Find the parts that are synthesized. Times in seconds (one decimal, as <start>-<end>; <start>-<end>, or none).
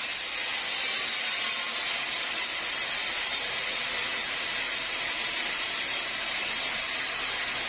0.0-0.4; 3.0-4.0; 4.8-7.7